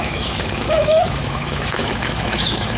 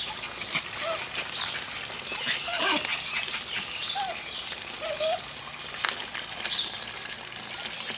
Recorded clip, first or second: second